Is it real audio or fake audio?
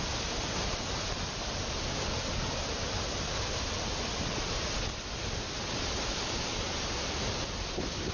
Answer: real